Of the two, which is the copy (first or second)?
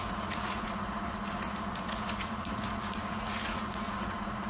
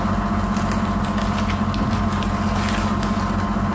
first